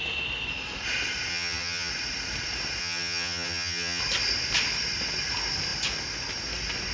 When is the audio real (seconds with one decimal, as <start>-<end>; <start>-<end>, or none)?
0.0-1.3; 1.9-2.8; 4.0-6.9